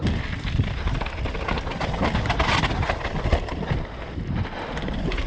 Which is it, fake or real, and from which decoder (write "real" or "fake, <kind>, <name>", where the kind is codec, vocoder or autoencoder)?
real